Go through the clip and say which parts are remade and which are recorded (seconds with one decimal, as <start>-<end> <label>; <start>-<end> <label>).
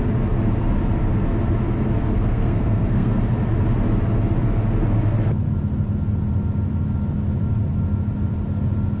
0.0-2.1 recorded; 2.1-3.2 remade; 3.2-9.0 recorded